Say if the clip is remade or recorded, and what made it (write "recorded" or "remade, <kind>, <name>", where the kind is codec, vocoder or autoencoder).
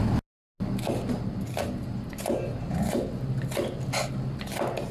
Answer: recorded